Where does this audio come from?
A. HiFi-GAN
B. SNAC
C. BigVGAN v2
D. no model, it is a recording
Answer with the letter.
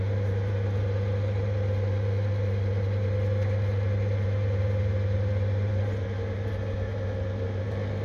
D